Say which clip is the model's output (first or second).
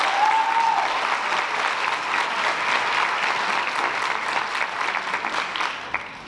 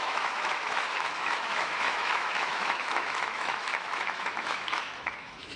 second